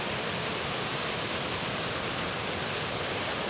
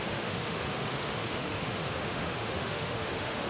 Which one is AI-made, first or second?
second